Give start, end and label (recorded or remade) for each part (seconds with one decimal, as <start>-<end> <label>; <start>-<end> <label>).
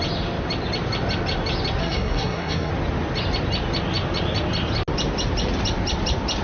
0.0-1.8 recorded; 1.8-2.7 remade; 2.7-6.4 recorded